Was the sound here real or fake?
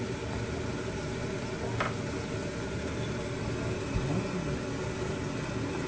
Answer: real